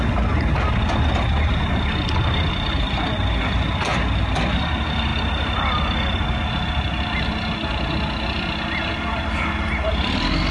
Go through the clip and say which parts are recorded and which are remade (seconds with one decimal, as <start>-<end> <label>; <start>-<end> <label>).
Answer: 0.0-10.5 recorded